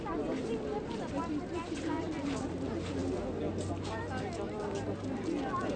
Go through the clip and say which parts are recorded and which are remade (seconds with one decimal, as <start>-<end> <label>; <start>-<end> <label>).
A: 0.0-5.8 recorded